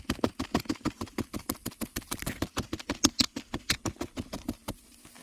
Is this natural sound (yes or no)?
yes